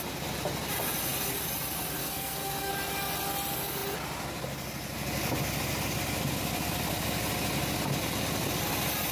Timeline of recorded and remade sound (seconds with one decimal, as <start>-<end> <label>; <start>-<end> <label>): 0.0-2.0 recorded; 2.0-2.7 remade; 2.7-9.1 recorded